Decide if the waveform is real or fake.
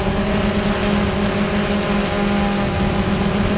real